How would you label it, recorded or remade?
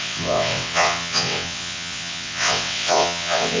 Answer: remade